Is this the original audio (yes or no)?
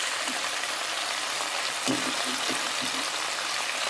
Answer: yes